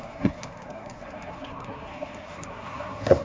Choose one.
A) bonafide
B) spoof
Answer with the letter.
B